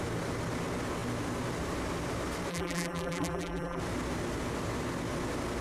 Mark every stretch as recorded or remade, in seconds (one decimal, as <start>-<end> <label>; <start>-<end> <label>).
0.0-2.5 recorded; 2.5-3.8 remade; 3.8-5.6 recorded